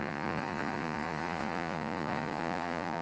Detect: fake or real fake